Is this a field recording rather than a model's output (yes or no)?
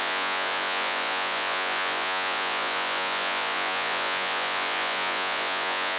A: no